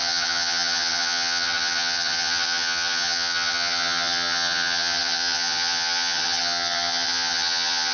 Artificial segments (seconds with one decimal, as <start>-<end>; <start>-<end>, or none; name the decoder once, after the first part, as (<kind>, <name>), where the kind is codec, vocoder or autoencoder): 0.0-7.9 (vocoder, HiFi-GAN)